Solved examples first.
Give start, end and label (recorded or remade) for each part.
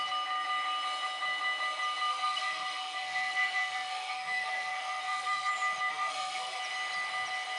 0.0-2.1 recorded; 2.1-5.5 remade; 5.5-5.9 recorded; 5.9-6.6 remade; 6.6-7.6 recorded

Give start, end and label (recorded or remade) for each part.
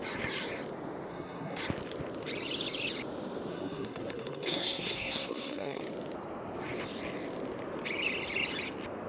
0.0-1.1 recorded; 1.1-1.6 remade; 1.6-3.5 recorded; 3.5-5.8 remade; 5.8-9.1 recorded